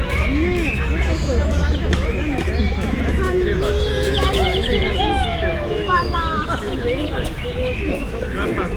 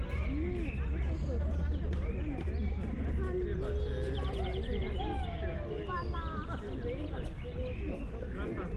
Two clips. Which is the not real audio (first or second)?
first